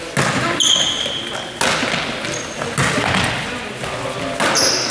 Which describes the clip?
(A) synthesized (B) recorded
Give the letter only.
B